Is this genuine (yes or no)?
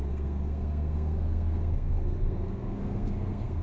no